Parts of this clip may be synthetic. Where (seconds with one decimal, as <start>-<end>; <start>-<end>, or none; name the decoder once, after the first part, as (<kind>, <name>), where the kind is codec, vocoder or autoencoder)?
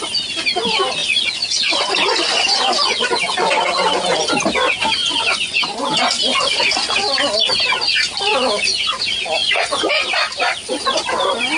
1.0-4.3 (vocoder, Vocos); 5.0-5.6; 9.4-9.9